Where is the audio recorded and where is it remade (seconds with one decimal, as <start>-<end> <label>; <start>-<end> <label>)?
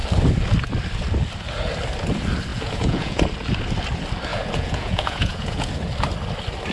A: 0.0-2.5 recorded; 2.5-3.2 remade; 3.2-4.3 recorded; 4.3-5.7 remade; 5.7-6.7 recorded